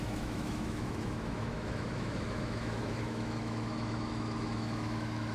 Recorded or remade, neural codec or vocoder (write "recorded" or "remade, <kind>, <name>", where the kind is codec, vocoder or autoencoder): remade, autoencoder, DAC-VAE